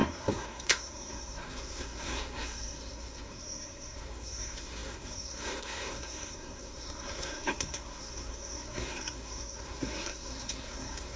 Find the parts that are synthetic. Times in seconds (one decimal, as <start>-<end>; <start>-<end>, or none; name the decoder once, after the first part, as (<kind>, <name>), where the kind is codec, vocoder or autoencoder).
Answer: 0.0-11.2 (codec, SNAC)